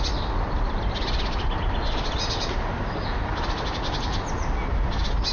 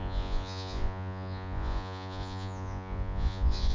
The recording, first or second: first